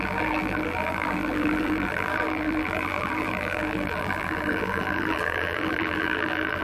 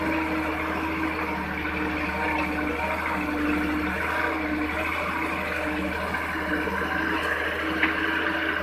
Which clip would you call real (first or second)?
second